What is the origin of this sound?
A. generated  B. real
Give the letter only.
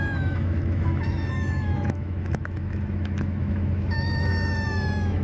A